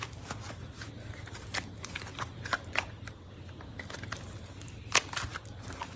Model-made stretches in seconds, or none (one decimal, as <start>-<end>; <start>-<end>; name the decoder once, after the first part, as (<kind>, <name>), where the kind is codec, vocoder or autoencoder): 2.1-2.8 (vocoder, BigVGAN v2)